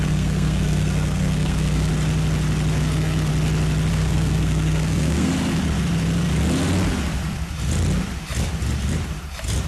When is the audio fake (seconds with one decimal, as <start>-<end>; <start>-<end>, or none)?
0.0-1.9; 2.8-3.3; 3.9-5.3